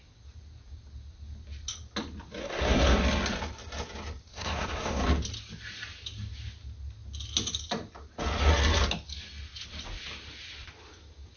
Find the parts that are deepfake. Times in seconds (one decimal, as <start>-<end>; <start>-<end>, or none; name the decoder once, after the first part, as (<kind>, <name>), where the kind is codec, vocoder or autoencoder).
2.4-3.0 (codec, SNAC); 4.3-5.0